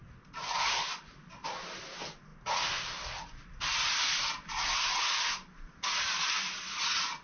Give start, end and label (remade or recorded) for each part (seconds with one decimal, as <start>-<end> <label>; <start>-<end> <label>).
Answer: 0.0-7.2 recorded